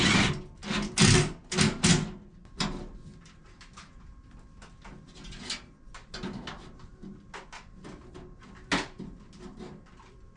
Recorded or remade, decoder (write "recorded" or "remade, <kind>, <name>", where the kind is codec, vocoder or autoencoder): recorded